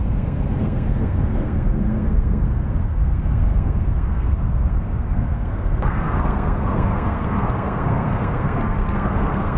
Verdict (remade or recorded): remade